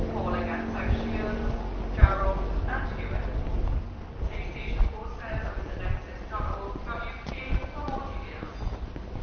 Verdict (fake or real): real